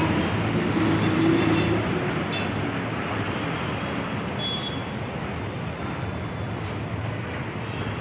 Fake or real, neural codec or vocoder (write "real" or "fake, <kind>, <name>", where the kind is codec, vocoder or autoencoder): real